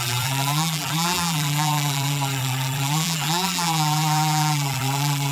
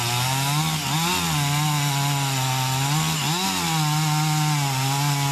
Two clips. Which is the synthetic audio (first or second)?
first